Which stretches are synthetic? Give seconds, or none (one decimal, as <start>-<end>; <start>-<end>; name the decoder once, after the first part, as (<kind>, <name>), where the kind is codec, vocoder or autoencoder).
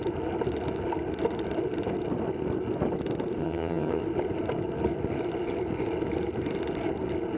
3.4-4.0 (vocoder, HiFi-GAN)